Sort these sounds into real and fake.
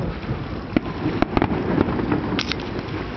real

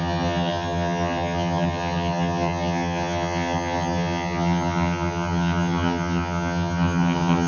fake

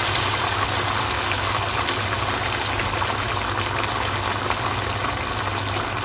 real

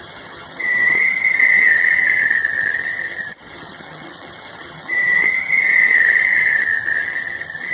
fake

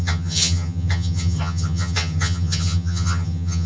fake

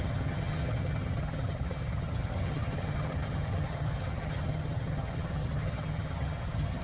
fake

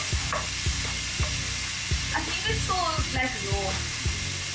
real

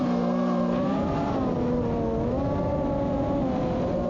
real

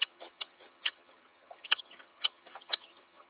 fake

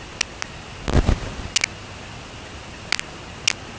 real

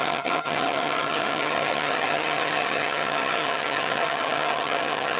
fake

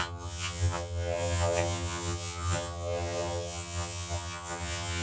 fake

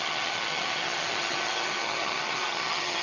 fake